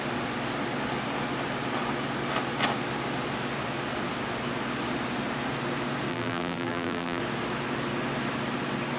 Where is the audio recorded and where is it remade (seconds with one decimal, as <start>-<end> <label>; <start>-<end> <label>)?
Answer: 0.0-6.1 recorded; 6.1-7.2 remade; 7.2-9.0 recorded